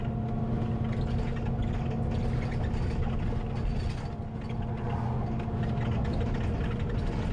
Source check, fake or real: real